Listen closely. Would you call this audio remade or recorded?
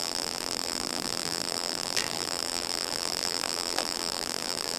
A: remade